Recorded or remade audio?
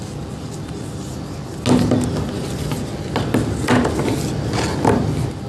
recorded